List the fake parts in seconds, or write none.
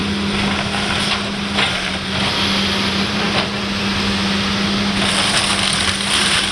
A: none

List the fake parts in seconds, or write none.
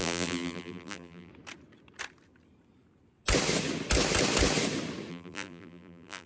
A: 0.0-1.3 (vocoder, BigVGAN v2); 5.1-6.3